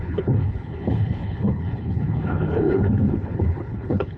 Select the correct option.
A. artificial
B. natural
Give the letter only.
A